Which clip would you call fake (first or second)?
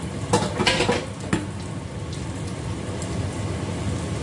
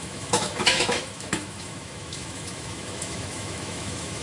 second